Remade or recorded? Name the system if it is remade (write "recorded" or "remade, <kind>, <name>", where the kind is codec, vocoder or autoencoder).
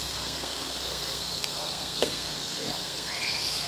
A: remade, codec, SNAC